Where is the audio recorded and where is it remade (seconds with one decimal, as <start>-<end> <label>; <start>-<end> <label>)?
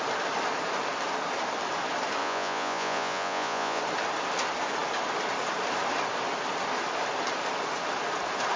0.0-2.2 recorded; 2.2-3.8 remade; 3.8-8.6 recorded